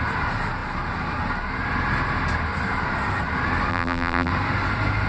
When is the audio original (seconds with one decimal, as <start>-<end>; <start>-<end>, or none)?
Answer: 0.0-3.7; 4.3-5.1